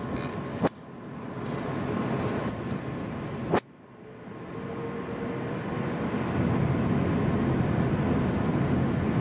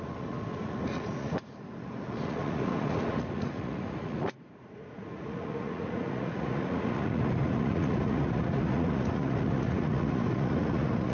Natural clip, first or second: first